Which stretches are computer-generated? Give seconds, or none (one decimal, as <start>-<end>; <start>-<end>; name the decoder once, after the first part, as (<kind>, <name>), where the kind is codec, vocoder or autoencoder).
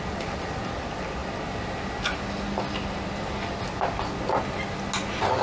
none